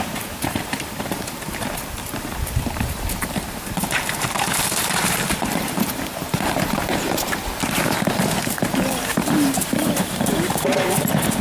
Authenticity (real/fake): fake